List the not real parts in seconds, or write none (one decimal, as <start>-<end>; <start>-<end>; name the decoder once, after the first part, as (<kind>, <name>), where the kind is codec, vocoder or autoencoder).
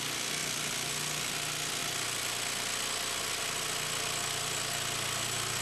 none